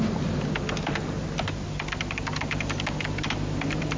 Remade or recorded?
recorded